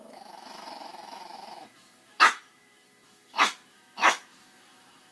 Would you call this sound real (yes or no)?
no